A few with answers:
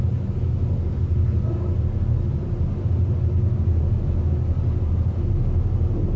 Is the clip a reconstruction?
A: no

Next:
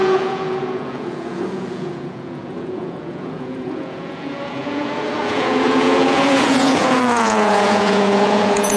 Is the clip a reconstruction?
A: yes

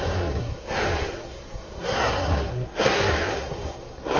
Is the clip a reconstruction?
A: yes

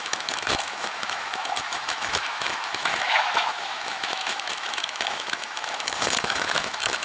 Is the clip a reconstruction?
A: yes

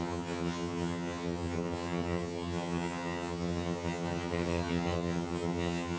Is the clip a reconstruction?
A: yes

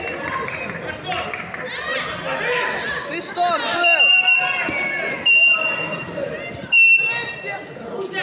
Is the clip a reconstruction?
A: no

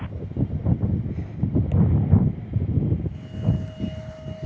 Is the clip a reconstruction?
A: no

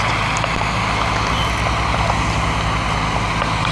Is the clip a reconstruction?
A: no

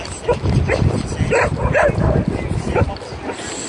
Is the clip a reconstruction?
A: no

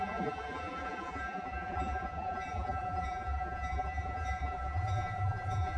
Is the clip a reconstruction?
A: yes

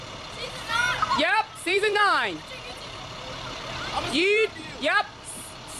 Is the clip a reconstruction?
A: yes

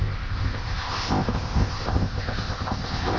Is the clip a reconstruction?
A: yes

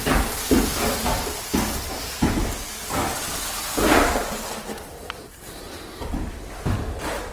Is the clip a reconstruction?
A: no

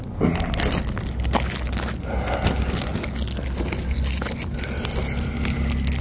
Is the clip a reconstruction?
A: no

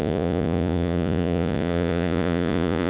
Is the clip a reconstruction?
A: yes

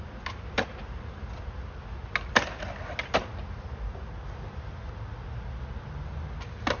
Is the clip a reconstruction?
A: no